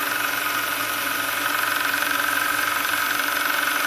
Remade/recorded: recorded